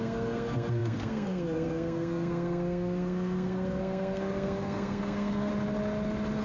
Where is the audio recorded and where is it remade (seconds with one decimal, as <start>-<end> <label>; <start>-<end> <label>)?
0.0-5.5 remade; 5.5-6.4 recorded